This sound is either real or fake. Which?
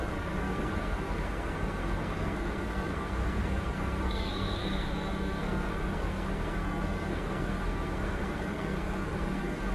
fake